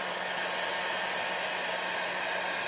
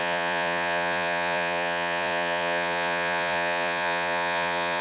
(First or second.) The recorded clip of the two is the first